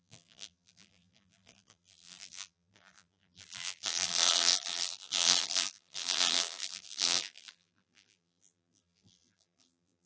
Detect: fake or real fake